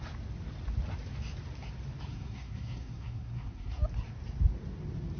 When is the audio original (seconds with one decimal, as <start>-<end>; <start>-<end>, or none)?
0.0-2.1; 3.8-5.2